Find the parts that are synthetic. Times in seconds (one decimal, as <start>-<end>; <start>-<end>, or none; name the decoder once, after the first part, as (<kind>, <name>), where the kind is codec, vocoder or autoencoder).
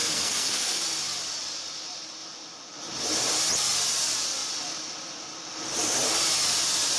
0.0-0.8 (codec, SNAC)